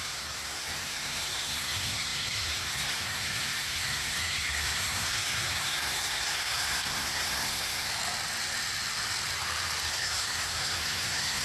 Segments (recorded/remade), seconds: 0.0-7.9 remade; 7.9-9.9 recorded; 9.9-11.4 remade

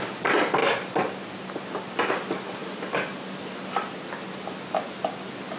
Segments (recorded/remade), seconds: 0.0-5.6 recorded

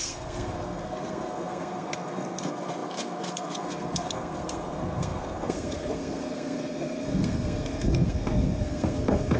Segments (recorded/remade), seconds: 0.0-9.4 remade

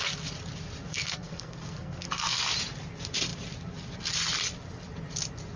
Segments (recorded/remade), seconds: 0.0-0.9 recorded; 0.9-2.4 remade; 2.4-5.6 recorded

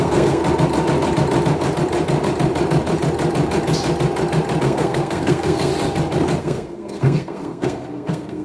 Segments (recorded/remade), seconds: 0.0-0.4 remade; 0.4-4.6 recorded; 4.6-5.7 remade; 5.7-6.4 recorded; 6.4-8.4 remade

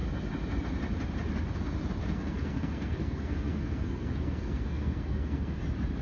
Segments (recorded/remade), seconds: 0.0-2.0 recorded; 2.0-5.6 remade; 5.6-6.0 recorded

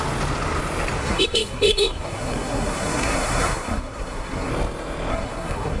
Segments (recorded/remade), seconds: 0.0-1.0 recorded; 1.0-4.5 remade; 4.5-5.1 recorded; 5.1-5.8 remade

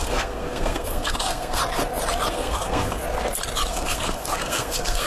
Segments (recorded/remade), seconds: 0.0-1.6 remade; 1.6-2.3 recorded; 2.3-3.0 remade; 3.0-3.7 recorded; 3.7-5.1 remade